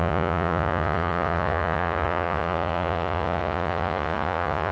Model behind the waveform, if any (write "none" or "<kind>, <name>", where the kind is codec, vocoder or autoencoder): vocoder, Vocos